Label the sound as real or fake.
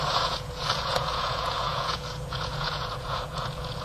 fake